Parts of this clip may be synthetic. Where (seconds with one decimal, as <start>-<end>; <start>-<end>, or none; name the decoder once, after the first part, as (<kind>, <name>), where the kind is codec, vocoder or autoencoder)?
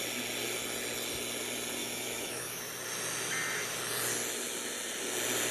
1.8-2.6 (autoencoder, DAC-VAE)